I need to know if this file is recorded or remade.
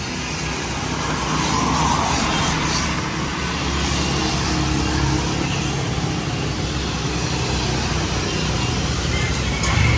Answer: recorded